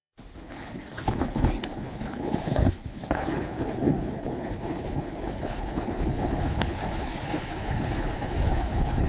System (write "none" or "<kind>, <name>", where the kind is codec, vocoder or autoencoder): codec, HILCodec